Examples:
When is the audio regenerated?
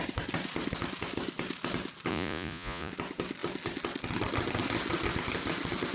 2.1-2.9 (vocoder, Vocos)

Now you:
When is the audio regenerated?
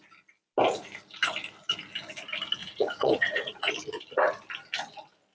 2.6-3.7 (vocoder, Vocos)